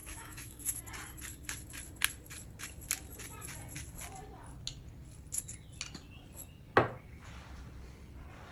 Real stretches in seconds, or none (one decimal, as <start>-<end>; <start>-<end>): 0.8-8.5